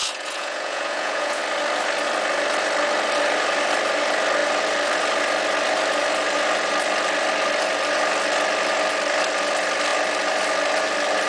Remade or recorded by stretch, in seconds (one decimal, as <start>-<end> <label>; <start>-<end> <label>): 0.0-1.4 remade; 1.4-11.3 recorded